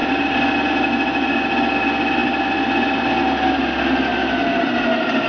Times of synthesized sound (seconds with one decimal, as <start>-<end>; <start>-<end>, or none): none